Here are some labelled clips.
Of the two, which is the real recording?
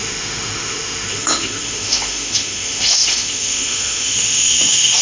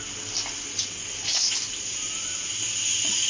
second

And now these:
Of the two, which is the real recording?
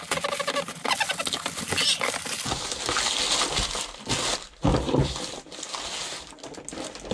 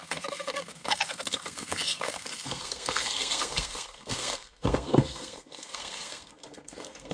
first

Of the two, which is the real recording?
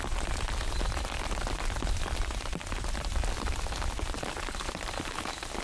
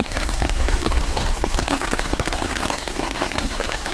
first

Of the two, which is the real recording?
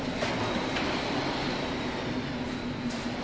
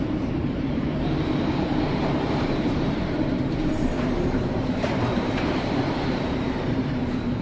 first